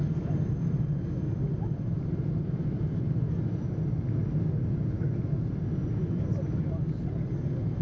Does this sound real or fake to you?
real